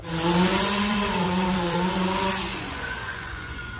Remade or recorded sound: remade